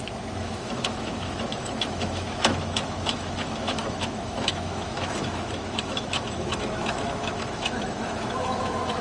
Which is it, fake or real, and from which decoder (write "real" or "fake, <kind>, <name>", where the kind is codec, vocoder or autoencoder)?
fake, autoencoder, DAC-VAE